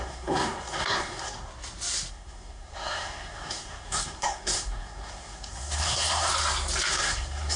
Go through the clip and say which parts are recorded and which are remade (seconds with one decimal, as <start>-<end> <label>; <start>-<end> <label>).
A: 0.0-1.5 remade; 1.5-2.1 recorded; 2.1-6.3 remade; 6.3-6.9 recorded; 6.9-7.6 remade